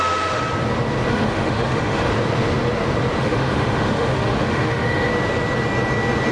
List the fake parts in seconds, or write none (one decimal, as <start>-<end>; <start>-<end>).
0.0-0.4; 1.1-2.1; 3.2-5.1